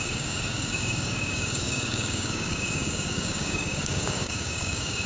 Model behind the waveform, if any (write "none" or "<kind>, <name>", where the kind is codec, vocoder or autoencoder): codec, DAC